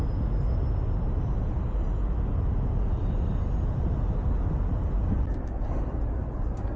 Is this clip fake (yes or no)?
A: no